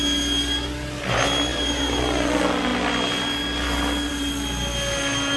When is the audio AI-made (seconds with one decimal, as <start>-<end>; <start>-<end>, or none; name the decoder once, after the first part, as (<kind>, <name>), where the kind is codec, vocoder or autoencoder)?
1.5-2.0 (vocoder, BigVGAN v2)

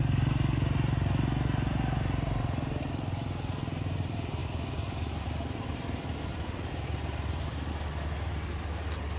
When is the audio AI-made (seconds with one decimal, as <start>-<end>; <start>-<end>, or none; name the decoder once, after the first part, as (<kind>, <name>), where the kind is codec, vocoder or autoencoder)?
4.4-7.7 (vocoder, BigVGAN v2)

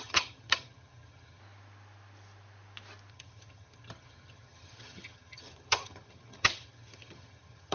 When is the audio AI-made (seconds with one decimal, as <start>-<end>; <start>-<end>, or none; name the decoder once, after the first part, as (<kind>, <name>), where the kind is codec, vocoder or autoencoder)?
0.0-1.4 (vocoder, HiFi-GAN); 3.1-7.7

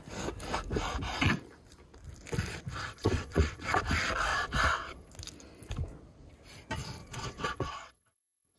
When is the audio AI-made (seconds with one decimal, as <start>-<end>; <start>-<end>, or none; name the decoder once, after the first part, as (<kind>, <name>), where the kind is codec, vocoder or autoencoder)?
2.7-3.8 (vocoder, WaveNeXt); 4.3-5.1; 7.0-8.6

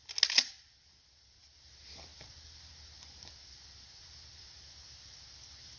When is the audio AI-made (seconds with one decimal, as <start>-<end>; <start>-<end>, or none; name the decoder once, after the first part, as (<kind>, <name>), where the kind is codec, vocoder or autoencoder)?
none

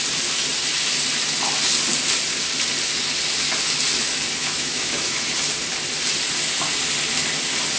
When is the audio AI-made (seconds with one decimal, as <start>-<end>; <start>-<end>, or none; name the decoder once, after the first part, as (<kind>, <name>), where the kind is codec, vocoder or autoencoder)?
4.4-5.3 (autoencoder, DAC-VAE)

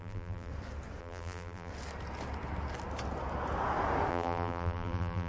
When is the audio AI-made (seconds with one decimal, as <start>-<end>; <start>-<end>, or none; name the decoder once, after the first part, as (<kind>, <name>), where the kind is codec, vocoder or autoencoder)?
0.0-0.5 (vocoder, BigVGAN v2); 1.0-1.7; 4.1-5.3

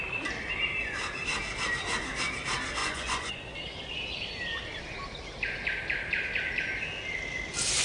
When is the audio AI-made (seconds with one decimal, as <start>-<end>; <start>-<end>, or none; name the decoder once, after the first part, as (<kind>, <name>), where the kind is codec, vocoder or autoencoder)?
2.8-3.4 (vocoder, Vocos)